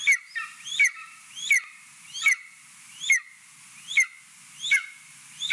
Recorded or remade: recorded